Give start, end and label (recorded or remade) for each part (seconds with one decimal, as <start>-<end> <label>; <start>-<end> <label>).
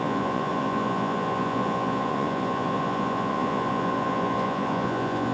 0.0-5.3 remade